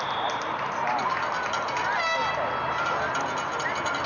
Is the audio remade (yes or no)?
no